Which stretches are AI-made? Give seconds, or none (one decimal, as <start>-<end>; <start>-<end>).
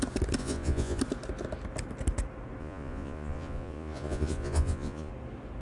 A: 0.4-1.0; 2.6-5.1